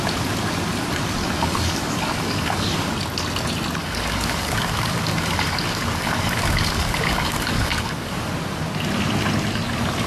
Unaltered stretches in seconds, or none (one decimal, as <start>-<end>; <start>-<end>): 0.0-1.2; 2.9-3.8; 8.3-10.1